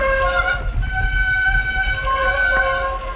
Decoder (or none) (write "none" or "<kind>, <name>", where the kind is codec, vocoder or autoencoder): none